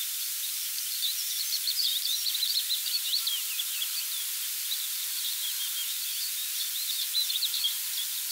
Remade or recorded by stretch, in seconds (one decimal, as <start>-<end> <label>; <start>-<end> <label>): 0.0-8.3 remade